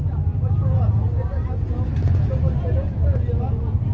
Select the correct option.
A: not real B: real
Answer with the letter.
B